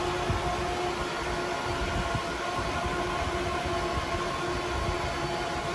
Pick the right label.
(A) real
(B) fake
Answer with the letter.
A